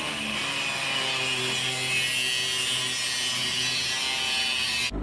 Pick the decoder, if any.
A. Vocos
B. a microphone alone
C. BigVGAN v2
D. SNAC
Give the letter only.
B